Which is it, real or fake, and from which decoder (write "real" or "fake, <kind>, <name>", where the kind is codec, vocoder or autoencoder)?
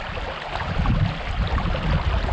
real